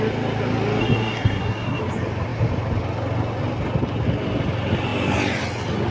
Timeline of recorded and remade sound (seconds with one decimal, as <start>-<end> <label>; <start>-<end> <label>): 0.0-0.8 recorded; 0.8-1.8 remade; 1.8-5.9 recorded